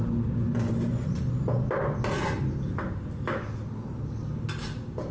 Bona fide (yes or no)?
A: yes